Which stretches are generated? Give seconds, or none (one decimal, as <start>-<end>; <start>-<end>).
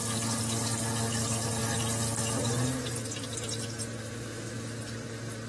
4.0-4.7